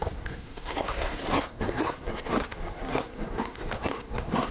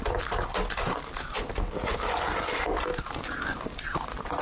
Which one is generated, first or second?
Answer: first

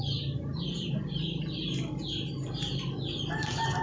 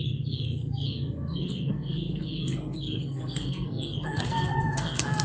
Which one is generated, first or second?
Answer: second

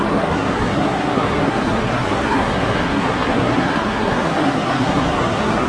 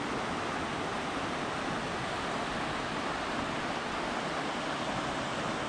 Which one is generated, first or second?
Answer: first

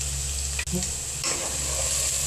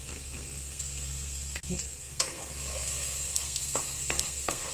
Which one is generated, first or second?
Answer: second